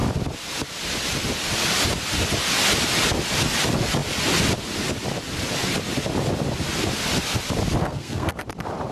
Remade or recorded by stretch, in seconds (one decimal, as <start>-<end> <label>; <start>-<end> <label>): 0.0-7.8 recorded; 7.8-8.4 remade; 8.4-8.9 recorded